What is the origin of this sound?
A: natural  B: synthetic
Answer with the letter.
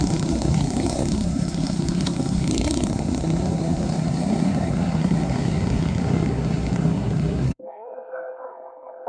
B